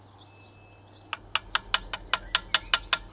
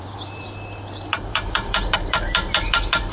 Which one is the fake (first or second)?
second